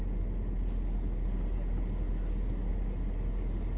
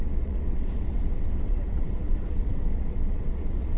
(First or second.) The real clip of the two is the first